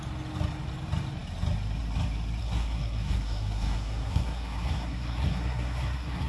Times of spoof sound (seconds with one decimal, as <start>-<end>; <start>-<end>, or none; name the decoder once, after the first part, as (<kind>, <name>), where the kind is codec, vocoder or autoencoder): 2.4-6.3 (codec, SNAC)